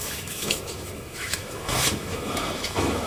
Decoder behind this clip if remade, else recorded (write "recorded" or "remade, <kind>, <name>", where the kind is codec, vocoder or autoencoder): remade, autoencoder, DAC-VAE